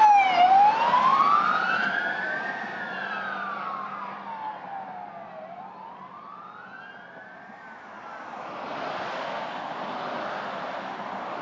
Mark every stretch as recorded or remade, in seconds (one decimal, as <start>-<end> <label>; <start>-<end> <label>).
0.0-1.1 recorded; 1.1-5.6 remade; 5.6-11.4 recorded